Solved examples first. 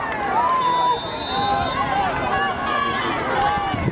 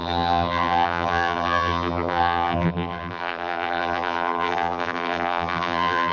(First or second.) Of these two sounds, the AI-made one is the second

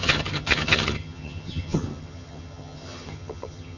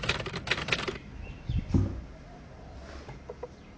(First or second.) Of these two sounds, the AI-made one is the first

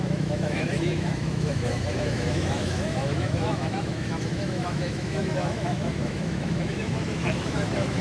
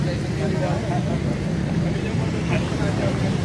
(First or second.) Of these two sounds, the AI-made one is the first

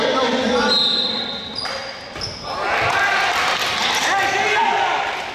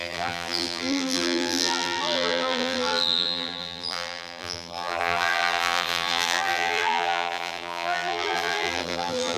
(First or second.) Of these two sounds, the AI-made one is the second